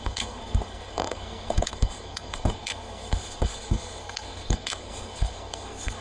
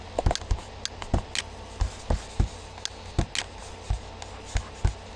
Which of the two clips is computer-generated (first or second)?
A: first